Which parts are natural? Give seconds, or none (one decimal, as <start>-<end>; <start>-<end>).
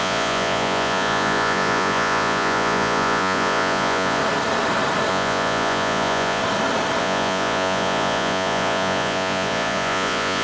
4.2-5.1; 6.4-7.0